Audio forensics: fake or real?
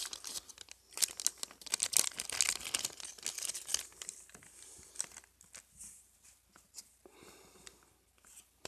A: real